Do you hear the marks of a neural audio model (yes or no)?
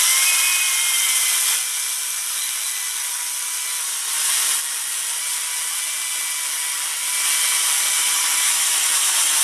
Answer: no